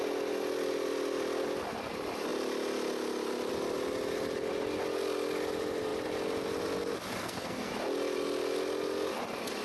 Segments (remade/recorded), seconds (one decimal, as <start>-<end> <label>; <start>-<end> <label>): 0.0-7.2 recorded; 7.2-7.7 remade; 7.7-9.6 recorded

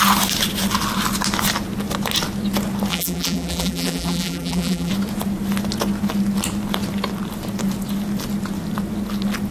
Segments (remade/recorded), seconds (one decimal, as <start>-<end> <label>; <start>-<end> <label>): 0.0-2.9 recorded; 2.9-4.9 remade; 4.9-9.5 recorded

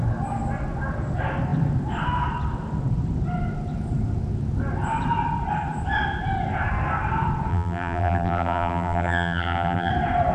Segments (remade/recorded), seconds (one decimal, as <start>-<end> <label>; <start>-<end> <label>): 0.0-7.5 recorded; 7.5-9.9 remade; 9.9-10.3 recorded

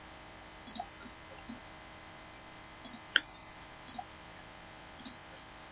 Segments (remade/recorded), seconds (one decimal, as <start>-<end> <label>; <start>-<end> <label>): 0.0-5.7 recorded

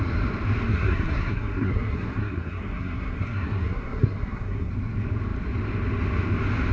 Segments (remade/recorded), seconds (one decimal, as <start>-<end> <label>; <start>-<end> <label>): 0.0-0.7 recorded; 0.7-4.7 remade; 4.7-6.7 recorded

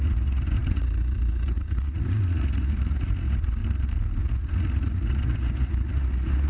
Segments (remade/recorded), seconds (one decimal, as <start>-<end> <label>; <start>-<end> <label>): 0.0-3.6 remade; 3.6-4.2 recorded; 4.2-6.5 remade

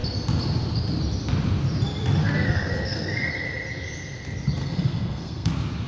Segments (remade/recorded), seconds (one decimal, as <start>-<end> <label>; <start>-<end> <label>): 0.0-2.2 recorded; 2.2-3.3 remade; 3.3-4.6 recorded; 4.6-5.5 remade; 5.5-5.9 recorded